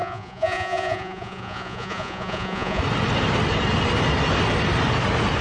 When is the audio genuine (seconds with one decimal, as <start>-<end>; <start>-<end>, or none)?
2.8-5.4

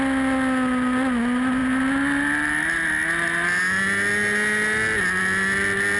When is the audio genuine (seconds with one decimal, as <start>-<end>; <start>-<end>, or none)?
0.0-6.0